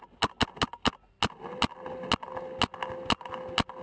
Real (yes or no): yes